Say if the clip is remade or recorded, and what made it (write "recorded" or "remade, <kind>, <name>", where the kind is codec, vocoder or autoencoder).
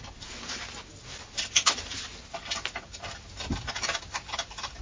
recorded